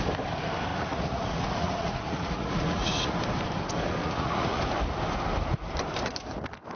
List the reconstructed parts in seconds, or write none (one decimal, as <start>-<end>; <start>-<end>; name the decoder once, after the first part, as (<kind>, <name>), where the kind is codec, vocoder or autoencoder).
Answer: 0.7-3.2 (vocoder, Vocos); 4.0-4.6